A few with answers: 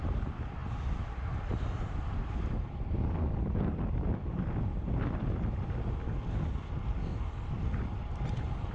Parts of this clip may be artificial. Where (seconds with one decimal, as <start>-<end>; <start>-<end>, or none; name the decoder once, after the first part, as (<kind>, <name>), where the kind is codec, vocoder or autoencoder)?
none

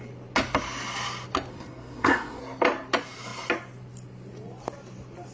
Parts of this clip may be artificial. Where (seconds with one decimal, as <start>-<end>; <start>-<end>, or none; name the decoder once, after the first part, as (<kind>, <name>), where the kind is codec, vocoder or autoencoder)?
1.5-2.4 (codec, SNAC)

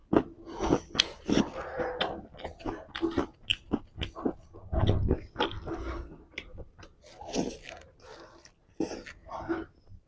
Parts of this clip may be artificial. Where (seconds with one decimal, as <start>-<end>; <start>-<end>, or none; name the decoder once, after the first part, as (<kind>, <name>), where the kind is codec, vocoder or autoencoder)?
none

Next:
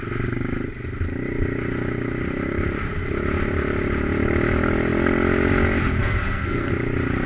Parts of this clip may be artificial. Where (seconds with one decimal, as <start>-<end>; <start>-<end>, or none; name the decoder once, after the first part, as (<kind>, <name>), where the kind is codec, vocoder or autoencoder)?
6.0-6.7 (codec, SNAC)

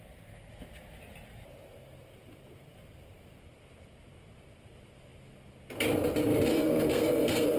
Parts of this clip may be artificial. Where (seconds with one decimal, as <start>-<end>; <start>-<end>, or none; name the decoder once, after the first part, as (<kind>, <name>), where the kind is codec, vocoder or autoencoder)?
6.5-7.6 (codec, SNAC)

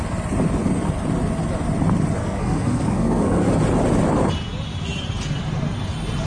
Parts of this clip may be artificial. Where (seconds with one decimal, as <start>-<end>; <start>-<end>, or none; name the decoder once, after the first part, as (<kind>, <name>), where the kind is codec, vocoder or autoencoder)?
2.2-3.5 (codec, SNAC)

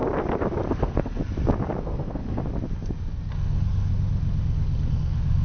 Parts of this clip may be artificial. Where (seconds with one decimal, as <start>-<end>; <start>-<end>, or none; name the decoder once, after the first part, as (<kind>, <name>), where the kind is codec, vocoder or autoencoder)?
0.7-1.2 (codec, SNAC); 1.8-2.4; 3.3-3.9; 4.9-5.4

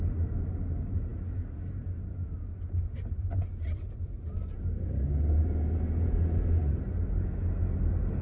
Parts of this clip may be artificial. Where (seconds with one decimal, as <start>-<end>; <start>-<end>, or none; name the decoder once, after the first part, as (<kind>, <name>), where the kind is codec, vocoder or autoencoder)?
none